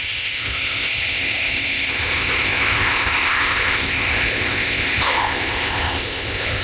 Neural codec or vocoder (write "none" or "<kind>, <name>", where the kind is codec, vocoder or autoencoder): codec, ZipCodec